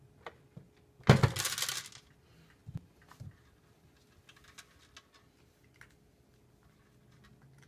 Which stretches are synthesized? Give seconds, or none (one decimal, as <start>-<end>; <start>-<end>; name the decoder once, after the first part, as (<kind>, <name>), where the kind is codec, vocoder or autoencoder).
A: none

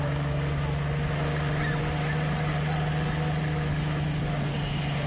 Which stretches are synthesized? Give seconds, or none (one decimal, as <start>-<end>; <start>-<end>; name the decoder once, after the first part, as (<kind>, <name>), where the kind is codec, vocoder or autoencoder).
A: 3.4-4.2 (autoencoder, DAC-VAE)